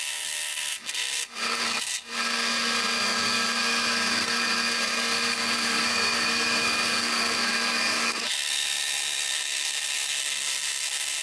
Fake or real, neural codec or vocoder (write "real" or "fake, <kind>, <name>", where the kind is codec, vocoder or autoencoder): fake, codec, SNAC